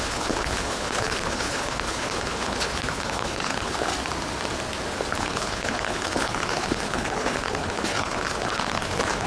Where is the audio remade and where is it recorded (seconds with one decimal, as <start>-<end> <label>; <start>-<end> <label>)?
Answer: 0.0-3.9 remade; 3.9-5.2 recorded; 5.2-9.3 remade